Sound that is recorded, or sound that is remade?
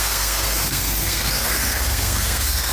remade